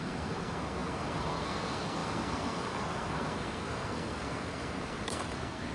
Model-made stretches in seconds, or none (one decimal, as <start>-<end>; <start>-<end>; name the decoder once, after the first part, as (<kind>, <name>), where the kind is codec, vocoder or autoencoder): 0.0-5.7 (codec, SNAC)